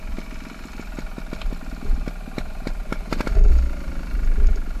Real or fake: real